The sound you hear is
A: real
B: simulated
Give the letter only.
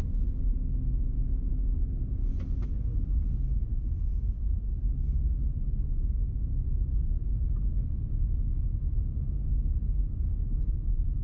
A